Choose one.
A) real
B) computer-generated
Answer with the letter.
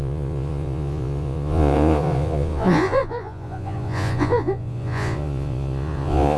B